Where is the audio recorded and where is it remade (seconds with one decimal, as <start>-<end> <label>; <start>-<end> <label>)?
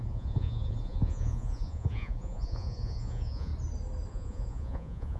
0.0-3.5 remade; 3.5-4.1 recorded; 4.1-5.2 remade